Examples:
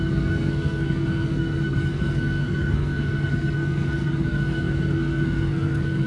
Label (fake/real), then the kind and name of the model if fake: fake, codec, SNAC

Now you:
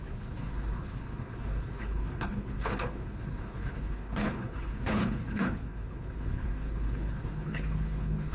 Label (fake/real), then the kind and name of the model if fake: fake, codec, HILCodec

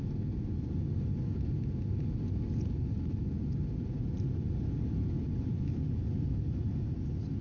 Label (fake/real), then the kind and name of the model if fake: real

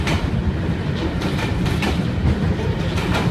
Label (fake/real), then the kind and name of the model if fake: real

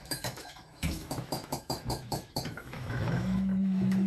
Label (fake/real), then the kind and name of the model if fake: fake, autoencoder, DAC-VAE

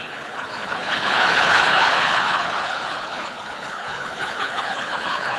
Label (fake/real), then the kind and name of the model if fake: fake, codec, HILCodec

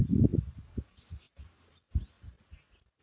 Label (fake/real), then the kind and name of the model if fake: real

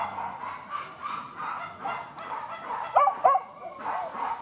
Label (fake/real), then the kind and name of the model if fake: real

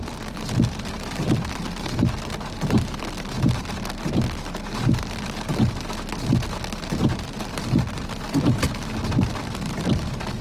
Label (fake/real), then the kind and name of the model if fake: fake, vocoder, BigVGAN v2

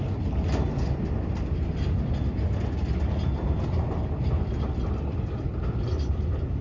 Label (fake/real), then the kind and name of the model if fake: real